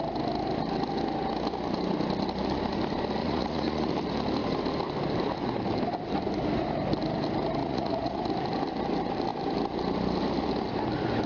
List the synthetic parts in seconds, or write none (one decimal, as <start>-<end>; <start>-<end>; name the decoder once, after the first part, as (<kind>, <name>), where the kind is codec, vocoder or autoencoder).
3.2-3.9 (vocoder, Vocos); 7.6-8.2